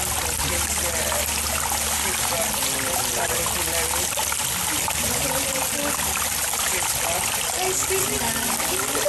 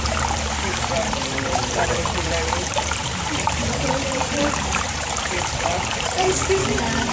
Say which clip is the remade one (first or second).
second